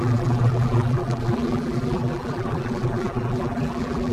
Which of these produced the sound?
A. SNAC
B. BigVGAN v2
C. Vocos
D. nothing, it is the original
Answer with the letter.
B